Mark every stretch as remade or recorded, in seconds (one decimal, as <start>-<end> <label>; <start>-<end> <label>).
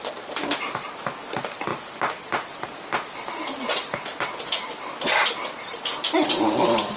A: 0.0-7.0 recorded